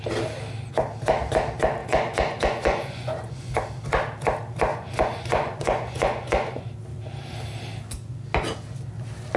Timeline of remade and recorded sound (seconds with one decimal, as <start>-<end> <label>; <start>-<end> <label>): 0.0-1.8 recorded; 1.8-3.5 remade; 3.5-4.7 recorded; 4.7-6.7 remade; 6.7-9.4 recorded